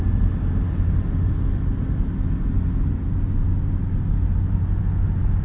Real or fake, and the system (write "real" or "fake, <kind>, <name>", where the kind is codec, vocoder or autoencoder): real